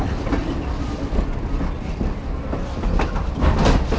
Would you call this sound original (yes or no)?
no